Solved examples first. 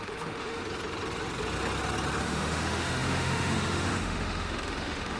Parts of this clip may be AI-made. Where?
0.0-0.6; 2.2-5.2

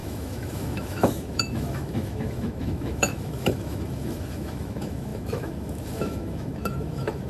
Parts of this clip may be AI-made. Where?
0.0-7.3

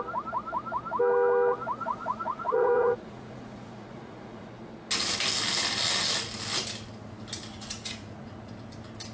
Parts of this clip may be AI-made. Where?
1.8-4.5; 7.5-8.5

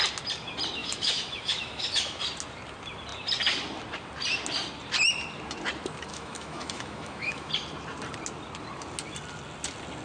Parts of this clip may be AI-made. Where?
0.8-2.2; 6.1-7.5

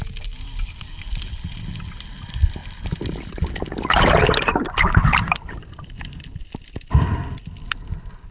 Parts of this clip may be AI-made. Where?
none